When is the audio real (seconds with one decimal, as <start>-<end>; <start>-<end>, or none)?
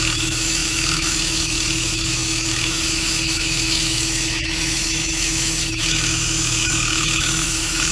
none